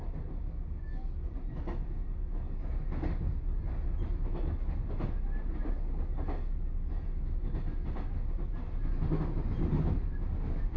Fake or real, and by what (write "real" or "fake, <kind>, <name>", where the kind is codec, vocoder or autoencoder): real